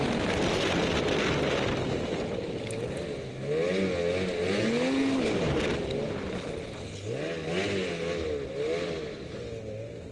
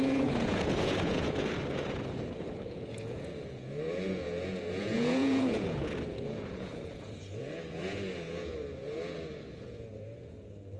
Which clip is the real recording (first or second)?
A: first